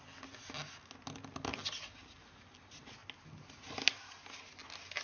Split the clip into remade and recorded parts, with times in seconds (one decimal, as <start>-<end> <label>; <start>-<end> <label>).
0.0-5.0 recorded